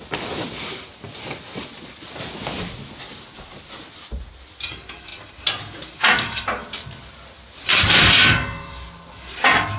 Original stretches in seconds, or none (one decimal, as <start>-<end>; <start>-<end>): 0.0-9.8

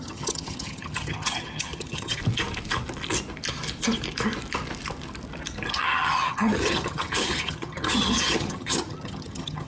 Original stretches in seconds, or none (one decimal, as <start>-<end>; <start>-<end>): 2.2-5.7